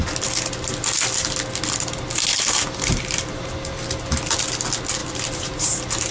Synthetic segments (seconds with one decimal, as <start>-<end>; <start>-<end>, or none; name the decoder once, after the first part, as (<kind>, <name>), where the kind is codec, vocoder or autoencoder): 2.3-3.5 (vocoder, BigVGAN v2); 5.0-6.1